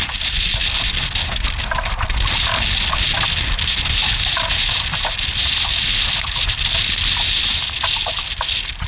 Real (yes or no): yes